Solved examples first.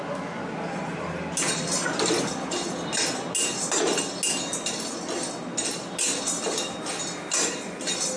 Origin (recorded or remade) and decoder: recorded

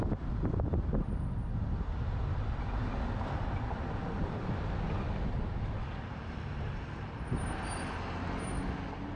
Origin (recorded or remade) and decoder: recorded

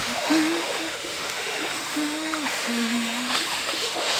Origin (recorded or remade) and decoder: remade, autoencoder, DAC-VAE